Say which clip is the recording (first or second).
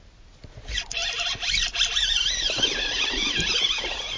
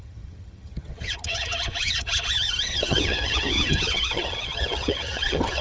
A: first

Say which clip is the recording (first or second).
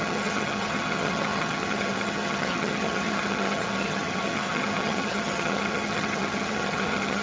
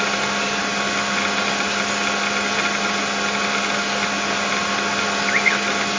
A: second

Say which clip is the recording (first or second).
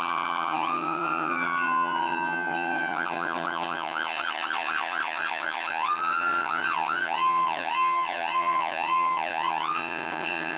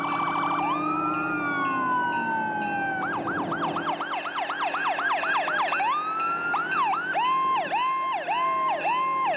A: second